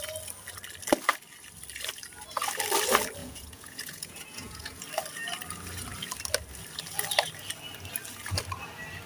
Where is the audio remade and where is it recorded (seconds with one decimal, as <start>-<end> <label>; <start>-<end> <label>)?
0.0-3.2 recorded; 3.2-4.8 remade; 4.8-9.1 recorded